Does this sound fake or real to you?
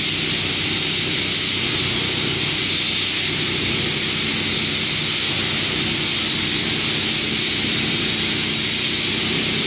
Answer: real